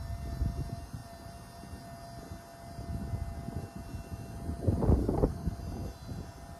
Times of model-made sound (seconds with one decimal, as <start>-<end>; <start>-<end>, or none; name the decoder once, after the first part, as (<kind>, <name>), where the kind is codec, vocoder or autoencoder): 5.0-5.5 (codec, SNAC)